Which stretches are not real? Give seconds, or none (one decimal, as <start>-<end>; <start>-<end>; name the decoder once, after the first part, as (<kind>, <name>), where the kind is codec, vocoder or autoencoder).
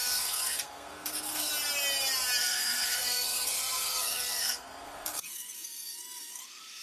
0.0-1.5 (codec, SNAC); 2.4-6.8